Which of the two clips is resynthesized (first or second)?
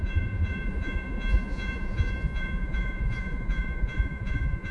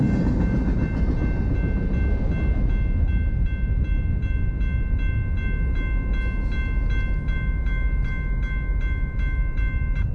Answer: first